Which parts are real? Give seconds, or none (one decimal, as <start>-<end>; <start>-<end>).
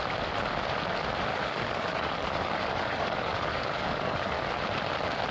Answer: 0.0-1.3; 4.5-5.3